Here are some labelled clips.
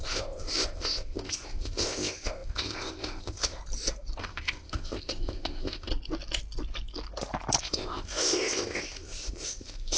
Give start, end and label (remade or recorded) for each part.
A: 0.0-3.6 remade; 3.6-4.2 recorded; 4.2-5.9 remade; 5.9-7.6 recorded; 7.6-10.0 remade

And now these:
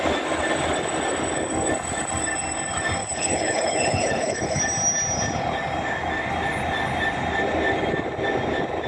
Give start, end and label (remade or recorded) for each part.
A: 0.0-3.0 recorded; 3.0-4.6 remade; 4.6-8.9 recorded

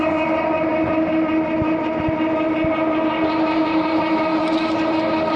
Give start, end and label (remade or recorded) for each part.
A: 0.0-5.4 recorded

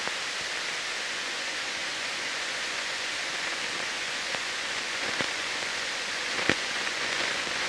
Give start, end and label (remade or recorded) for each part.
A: 0.0-1.0 recorded; 1.0-7.7 remade

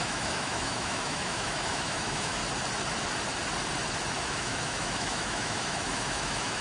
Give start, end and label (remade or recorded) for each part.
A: 0.0-2.4 remade; 2.4-4.2 recorded; 4.2-6.6 remade

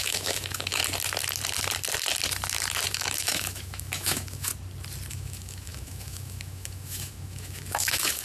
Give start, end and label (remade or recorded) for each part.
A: 0.0-0.8 remade; 0.8-2.9 recorded; 2.9-4.5 remade; 4.5-5.1 recorded; 5.1-8.2 remade